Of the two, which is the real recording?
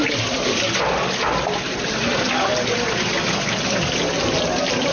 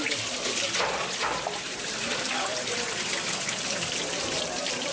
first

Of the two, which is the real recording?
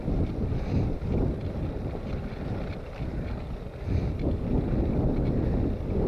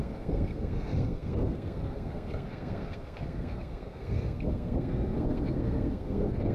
first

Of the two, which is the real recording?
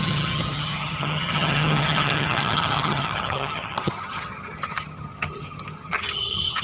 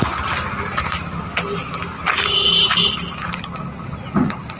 second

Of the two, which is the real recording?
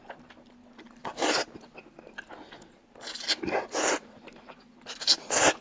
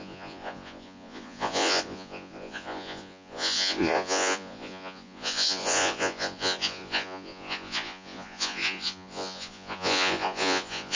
first